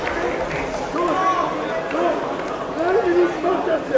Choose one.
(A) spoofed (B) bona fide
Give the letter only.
B